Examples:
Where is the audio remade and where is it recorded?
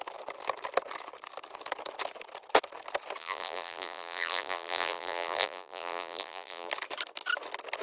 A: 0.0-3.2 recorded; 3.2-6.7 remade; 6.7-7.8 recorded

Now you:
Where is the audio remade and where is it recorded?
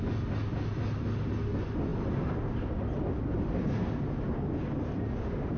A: 0.0-5.6 recorded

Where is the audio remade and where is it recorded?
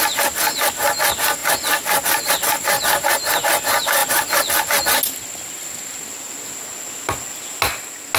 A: 0.0-8.2 recorded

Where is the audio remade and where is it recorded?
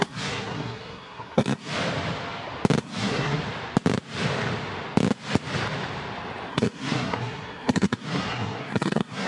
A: 0.0-1.7 remade; 1.7-2.8 recorded; 2.8-3.4 remade; 3.4-6.5 recorded; 6.5-9.3 remade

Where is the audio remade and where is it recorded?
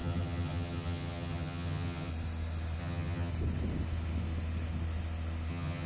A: 0.0-2.1 remade; 2.1-2.8 recorded; 2.8-3.3 remade; 3.3-5.5 recorded; 5.5-5.9 remade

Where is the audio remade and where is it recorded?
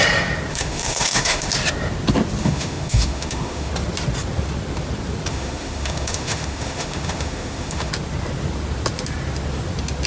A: 0.0-0.5 recorded; 0.5-1.5 remade; 1.5-2.4 recorded; 2.4-3.7 remade; 3.7-5.3 recorded; 5.3-7.9 remade; 7.9-10.1 recorded